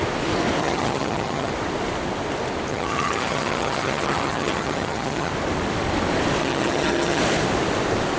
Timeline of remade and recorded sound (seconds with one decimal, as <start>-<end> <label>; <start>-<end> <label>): 0.0-0.6 recorded; 0.6-1.5 remade; 1.5-2.7 recorded; 2.7-5.3 remade; 5.3-6.4 recorded; 6.4-7.2 remade; 7.2-8.2 recorded